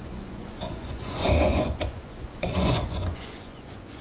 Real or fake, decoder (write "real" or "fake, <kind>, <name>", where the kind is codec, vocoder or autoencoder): fake, vocoder, Vocos